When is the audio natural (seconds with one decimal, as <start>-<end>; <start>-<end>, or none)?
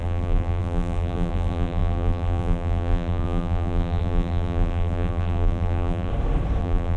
6.1-6.6